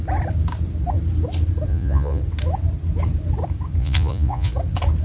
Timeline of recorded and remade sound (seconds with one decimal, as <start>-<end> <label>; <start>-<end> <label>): 0.0-1.7 recorded; 1.7-2.2 remade; 2.2-3.8 recorded; 3.8-4.5 remade; 4.5-5.0 recorded